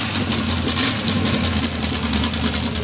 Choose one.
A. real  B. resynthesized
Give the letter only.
A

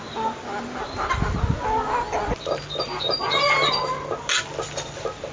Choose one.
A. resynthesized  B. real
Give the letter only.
B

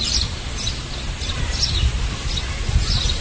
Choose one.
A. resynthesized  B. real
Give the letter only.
B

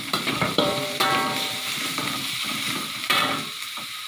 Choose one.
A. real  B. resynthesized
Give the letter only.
B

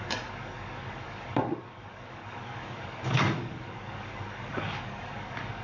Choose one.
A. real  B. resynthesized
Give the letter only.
B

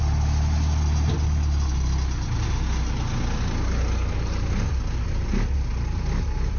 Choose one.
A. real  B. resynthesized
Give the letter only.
A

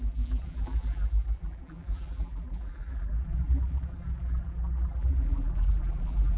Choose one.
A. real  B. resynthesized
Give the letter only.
B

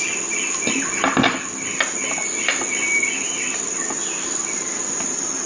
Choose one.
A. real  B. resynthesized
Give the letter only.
A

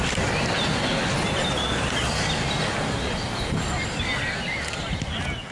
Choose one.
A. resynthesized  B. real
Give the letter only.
B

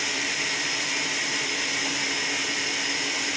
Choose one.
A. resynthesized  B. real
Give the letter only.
B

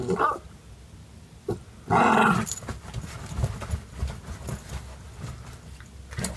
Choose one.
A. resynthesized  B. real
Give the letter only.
B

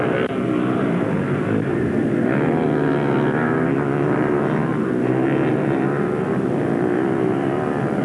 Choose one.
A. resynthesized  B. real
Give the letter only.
B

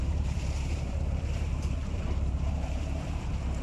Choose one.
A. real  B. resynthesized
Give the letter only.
B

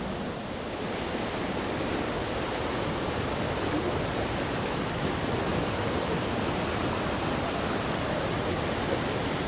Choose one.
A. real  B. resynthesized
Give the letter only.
A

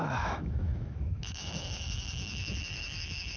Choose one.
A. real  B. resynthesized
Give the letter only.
B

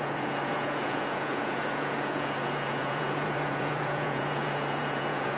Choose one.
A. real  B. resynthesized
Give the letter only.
B